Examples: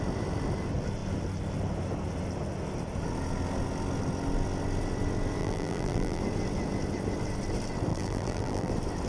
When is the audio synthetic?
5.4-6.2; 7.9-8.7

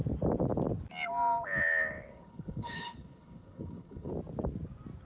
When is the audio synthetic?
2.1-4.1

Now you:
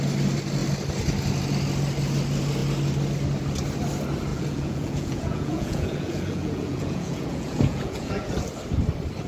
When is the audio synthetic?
4.3-8.3

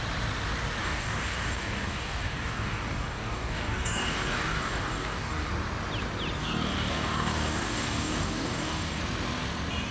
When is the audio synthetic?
0.8-5.5; 6.4-9.0

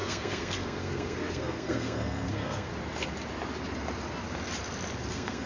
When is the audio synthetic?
0.0-2.7; 5.1-5.5

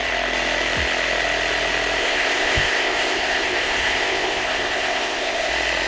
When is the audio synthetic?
2.0-5.5